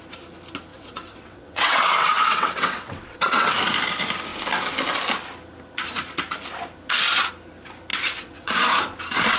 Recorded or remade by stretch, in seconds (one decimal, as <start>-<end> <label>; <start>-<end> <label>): 0.0-0.7 recorded; 0.7-3.5 remade; 3.5-7.9 recorded; 7.9-8.5 remade; 8.5-9.4 recorded